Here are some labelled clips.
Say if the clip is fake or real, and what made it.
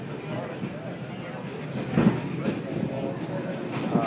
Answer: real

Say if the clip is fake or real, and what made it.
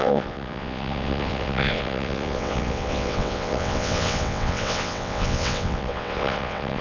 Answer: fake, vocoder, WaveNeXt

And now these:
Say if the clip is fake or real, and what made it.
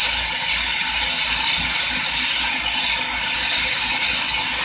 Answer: real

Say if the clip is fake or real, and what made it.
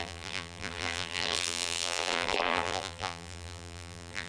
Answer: fake, vocoder, BigVGAN v2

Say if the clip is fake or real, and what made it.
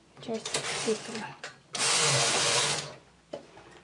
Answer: fake, vocoder, Vocos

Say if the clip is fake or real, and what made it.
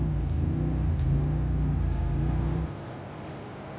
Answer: real